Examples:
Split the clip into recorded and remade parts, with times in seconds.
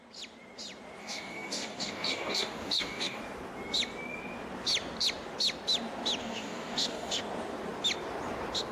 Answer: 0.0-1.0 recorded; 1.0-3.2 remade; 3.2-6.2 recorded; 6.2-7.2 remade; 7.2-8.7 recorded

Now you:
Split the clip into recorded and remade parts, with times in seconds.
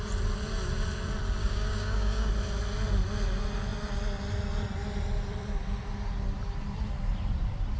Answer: 0.0-1.4 recorded; 1.4-2.3 remade; 2.3-7.8 recorded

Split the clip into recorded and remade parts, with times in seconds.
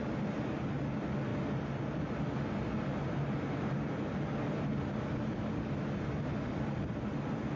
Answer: 0.0-7.6 recorded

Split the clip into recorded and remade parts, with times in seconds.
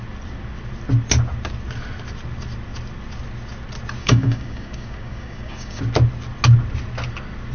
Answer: 0.0-4.0 recorded; 4.0-5.8 remade; 5.8-7.5 recorded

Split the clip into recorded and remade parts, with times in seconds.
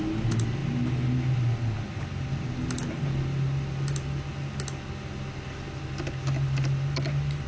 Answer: 0.0-7.5 recorded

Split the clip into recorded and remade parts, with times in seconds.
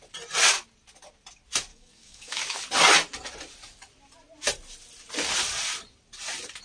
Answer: 0.0-1.7 recorded; 1.7-2.6 remade; 2.6-6.6 recorded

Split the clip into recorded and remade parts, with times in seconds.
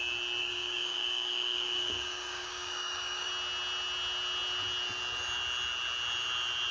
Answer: 0.0-0.4 recorded; 0.4-3.3 remade; 3.3-6.7 recorded